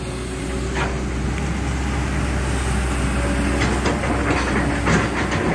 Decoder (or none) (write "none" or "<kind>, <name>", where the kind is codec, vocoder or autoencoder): none